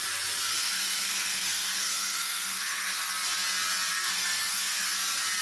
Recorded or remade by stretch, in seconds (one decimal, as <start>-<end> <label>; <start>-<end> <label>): 0.0-0.5 recorded; 0.5-3.1 remade; 3.1-3.9 recorded; 3.9-4.9 remade; 4.9-5.4 recorded

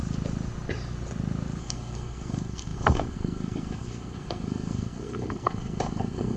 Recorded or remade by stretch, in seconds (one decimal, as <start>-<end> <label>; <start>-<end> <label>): 0.0-1.6 recorded; 1.6-6.4 remade